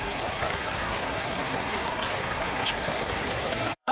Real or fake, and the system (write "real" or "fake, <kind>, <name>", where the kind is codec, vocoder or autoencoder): fake, codec, SNAC